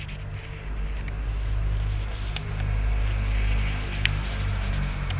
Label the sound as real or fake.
real